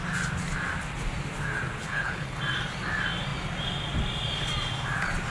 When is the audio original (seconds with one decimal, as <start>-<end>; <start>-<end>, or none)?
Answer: 0.0-1.8; 2.4-5.3